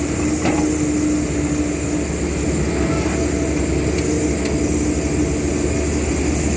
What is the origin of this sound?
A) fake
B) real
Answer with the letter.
B